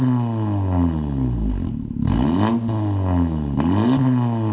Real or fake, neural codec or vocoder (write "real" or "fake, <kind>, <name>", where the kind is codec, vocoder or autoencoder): real